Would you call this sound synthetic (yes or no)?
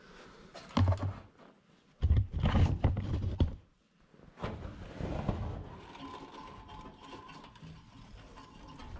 no